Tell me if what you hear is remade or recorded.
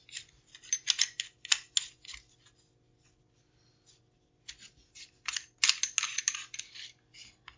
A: recorded